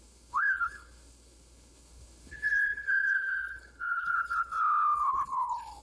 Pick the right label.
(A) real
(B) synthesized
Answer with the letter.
B